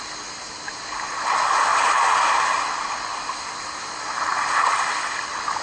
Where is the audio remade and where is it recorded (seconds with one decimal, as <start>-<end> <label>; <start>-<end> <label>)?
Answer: 0.0-1.7 recorded; 1.7-2.9 remade; 2.9-5.6 recorded